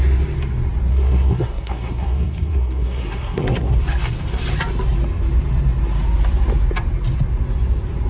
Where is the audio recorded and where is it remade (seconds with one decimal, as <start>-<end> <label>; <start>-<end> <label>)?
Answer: 0.0-0.9 recorded; 0.9-3.8 remade; 3.8-8.1 recorded